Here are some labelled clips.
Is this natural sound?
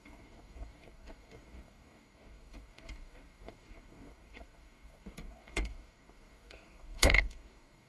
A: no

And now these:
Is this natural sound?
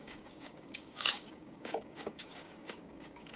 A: no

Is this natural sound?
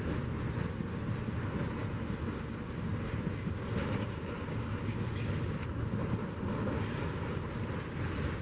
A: yes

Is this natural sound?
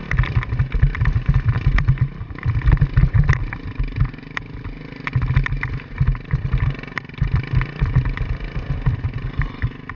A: yes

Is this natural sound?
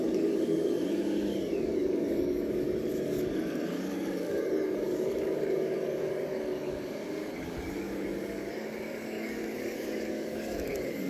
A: no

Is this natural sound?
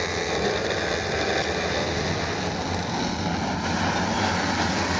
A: yes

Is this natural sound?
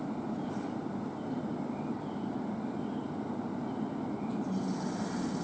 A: yes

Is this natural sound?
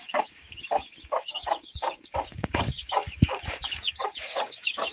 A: no